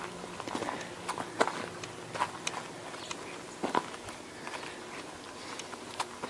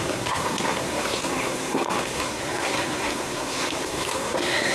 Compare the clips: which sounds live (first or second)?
first